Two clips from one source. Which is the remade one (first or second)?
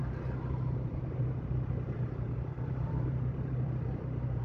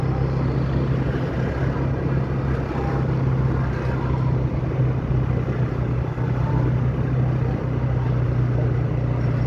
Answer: first